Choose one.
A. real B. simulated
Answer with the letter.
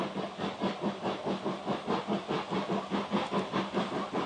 A